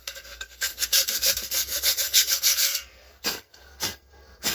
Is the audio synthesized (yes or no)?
yes